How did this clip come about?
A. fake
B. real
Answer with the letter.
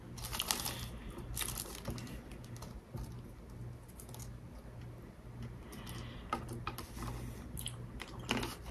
B